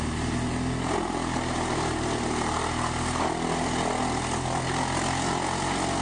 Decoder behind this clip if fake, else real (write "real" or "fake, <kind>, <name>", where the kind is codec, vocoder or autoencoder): real